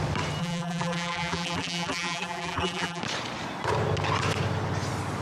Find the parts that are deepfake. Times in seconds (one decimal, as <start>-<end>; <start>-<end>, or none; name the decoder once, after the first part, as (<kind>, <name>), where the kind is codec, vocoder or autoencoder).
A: 0.4-3.0 (vocoder, BigVGAN v2)